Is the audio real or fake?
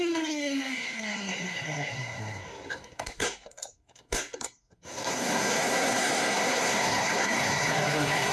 fake